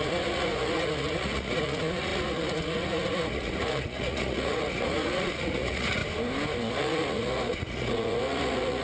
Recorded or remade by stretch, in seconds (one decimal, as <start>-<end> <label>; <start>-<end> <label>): 0.0-6.0 remade; 6.0-6.7 recorded; 6.7-8.8 remade